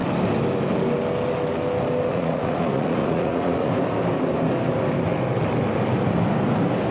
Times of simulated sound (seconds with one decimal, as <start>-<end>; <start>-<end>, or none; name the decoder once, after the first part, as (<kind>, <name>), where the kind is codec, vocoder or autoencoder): 2.1-3.7 (vocoder, Vocos)